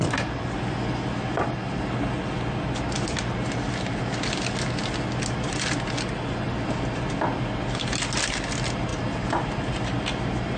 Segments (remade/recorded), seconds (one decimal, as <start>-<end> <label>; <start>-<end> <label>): 0.0-10.6 recorded

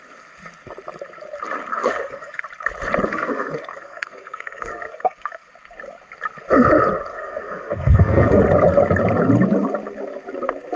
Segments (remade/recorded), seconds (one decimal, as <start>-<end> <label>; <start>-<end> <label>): 0.0-1.7 recorded; 1.7-2.4 remade; 2.4-3.1 recorded; 3.1-5.5 remade; 5.5-7.1 recorded; 7.1-8.4 remade; 8.4-10.8 recorded

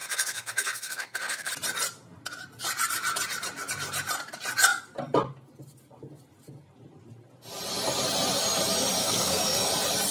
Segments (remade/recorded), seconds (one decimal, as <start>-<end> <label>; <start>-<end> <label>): 0.0-1.5 remade; 1.5-9.0 recorded; 9.0-9.7 remade; 9.7-10.1 recorded

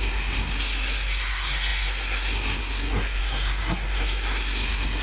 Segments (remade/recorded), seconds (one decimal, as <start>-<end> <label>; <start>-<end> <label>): 0.0-5.0 remade

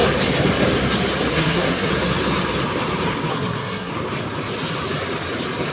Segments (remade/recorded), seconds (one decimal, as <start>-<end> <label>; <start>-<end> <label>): 0.0-1.3 recorded; 1.3-1.9 remade; 1.9-3.3 recorded; 3.3-3.9 remade; 3.9-5.7 recorded

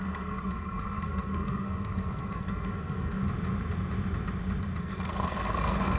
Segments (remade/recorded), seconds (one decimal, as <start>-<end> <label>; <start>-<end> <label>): 0.0-3.2 remade; 3.2-4.8 recorded; 4.8-6.0 remade